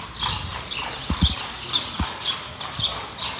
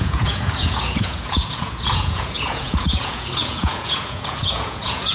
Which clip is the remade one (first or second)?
second